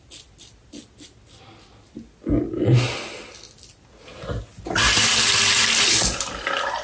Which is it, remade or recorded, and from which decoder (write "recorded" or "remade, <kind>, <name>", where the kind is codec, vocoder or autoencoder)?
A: recorded